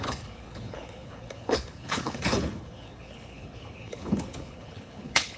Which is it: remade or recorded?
remade